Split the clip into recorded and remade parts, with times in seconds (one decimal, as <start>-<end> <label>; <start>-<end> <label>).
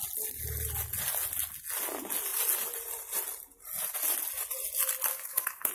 0.0-5.1 recorded; 5.1-5.7 remade